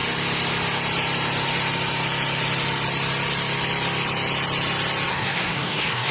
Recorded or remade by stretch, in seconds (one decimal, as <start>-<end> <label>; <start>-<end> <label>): 0.0-5.1 recorded; 5.1-6.1 remade